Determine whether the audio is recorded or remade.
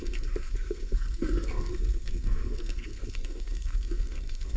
remade